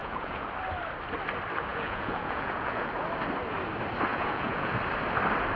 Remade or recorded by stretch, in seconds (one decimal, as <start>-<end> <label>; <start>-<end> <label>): 0.0-0.5 remade; 0.5-1.7 recorded; 1.7-2.9 remade; 2.9-4.1 recorded; 4.1-4.7 remade; 4.7-5.6 recorded